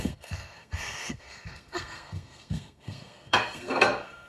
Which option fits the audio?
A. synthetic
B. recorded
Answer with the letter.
A